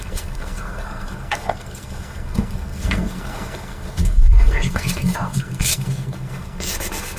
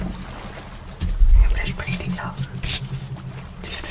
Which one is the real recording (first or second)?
second